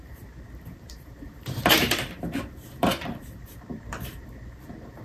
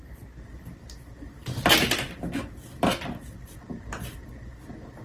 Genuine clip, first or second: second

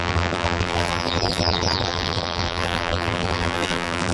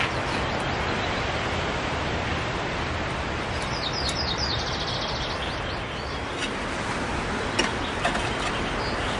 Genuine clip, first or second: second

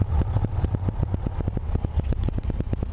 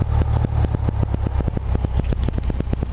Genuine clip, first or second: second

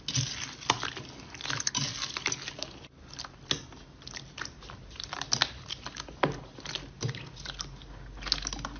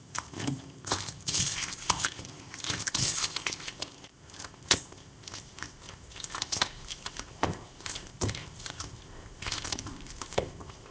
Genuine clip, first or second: first